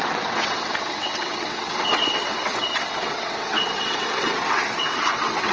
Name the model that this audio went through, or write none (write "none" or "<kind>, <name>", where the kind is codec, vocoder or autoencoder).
vocoder, WaveNeXt